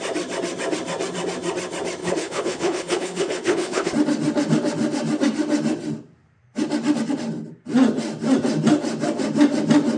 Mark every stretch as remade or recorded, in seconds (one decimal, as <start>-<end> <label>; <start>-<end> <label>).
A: 0.0-2.0 recorded; 2.0-3.9 remade; 3.9-10.0 recorded